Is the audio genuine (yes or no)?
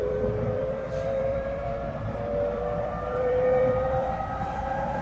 no